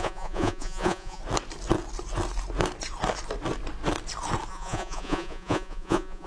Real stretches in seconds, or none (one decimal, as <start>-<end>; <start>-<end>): 1.2-4.5